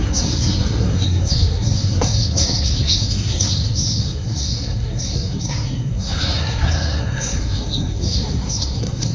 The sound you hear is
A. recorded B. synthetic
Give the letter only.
B